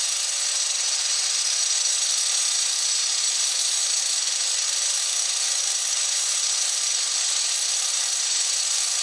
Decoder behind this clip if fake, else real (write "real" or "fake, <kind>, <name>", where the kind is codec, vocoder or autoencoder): real